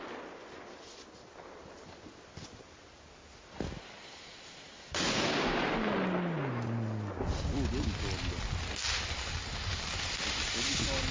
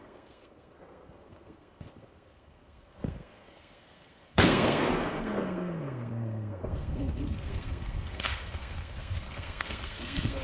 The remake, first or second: second